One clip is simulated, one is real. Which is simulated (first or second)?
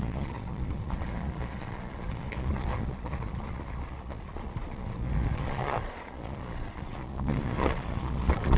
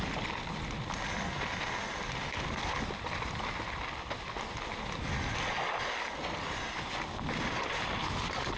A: first